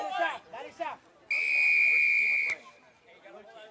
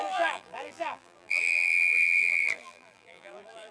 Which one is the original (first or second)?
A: first